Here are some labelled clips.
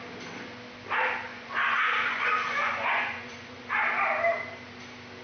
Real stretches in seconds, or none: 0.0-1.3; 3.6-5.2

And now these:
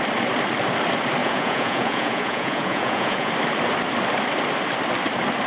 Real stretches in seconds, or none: 0.0-1.2; 3.3-5.5

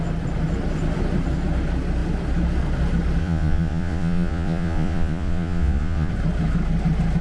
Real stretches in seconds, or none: 0.0-3.2; 6.1-7.2

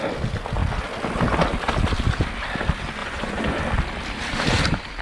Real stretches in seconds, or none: 0.0-3.0; 3.6-5.0

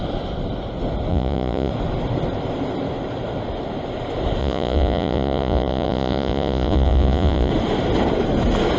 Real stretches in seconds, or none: 0.0-1.1; 1.7-4.4; 7.5-8.8

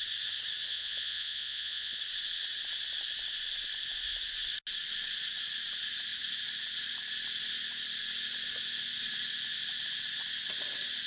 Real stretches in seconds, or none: 0.0-0.7; 2.0-11.1

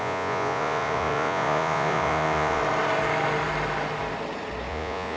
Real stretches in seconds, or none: 2.6-4.7